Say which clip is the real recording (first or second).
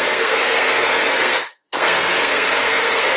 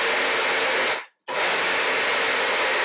second